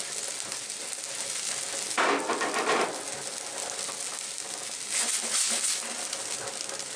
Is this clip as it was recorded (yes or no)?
yes